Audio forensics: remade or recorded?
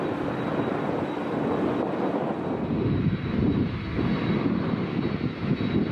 recorded